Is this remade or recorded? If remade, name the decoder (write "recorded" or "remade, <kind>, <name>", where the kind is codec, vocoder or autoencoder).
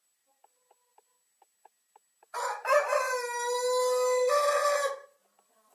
recorded